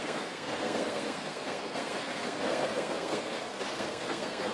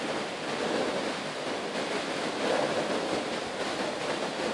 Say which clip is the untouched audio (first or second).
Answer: second